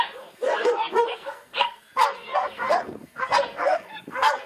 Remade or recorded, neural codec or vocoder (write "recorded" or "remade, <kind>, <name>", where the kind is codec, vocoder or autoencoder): remade, codec, SNAC